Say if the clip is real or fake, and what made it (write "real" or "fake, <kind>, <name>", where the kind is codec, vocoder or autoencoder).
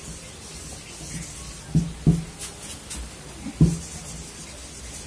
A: real